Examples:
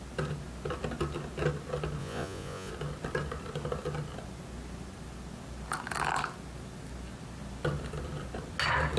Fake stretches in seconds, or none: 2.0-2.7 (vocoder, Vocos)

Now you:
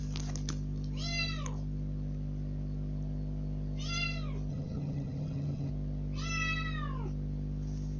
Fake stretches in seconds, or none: 4.5-5.7 (vocoder, HiFi-GAN)

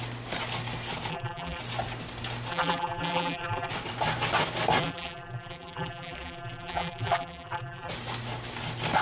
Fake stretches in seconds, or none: 1.1-1.6 (vocoder, BigVGAN v2); 2.5-3.7; 4.8-7.9